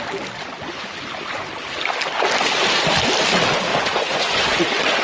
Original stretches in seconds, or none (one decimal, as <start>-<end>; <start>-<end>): 0.0-3.7; 4.6-5.0